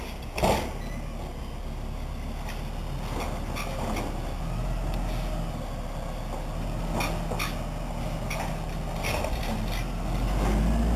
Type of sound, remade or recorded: recorded